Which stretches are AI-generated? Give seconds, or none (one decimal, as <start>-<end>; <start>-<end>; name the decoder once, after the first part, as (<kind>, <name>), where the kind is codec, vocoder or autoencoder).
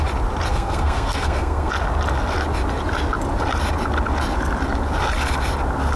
0.5-1.7 (codec, SNAC)